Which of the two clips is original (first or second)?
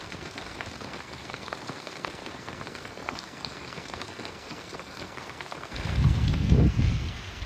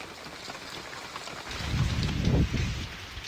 second